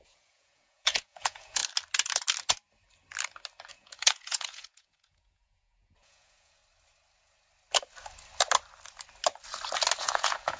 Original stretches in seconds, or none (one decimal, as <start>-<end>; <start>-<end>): 1.6-3.7; 6.6-10.0